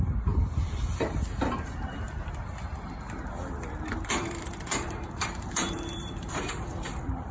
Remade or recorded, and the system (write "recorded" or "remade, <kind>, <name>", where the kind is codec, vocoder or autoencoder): remade, vocoder, BigVGAN v2